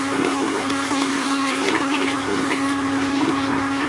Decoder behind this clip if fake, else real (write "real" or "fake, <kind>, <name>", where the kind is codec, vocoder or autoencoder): fake, codec, SNAC